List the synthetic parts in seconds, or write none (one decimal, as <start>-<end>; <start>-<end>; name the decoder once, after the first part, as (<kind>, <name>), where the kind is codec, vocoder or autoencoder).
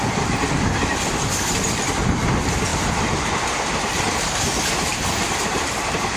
2.7-3.3 (vocoder, BigVGAN v2); 4.9-6.2